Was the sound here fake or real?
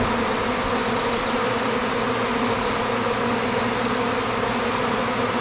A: real